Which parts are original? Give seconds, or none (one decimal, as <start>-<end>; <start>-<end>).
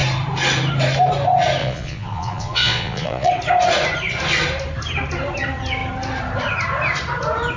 0.0-1.6; 3.3-7.6